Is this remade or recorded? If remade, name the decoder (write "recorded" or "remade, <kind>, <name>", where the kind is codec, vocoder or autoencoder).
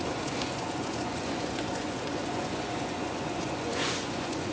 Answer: remade, vocoder, Vocos